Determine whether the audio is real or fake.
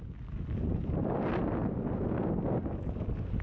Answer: real